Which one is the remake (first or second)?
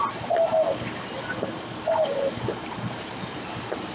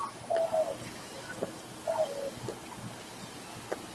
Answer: first